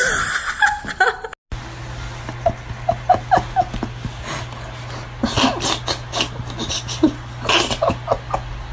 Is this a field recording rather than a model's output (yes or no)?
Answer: yes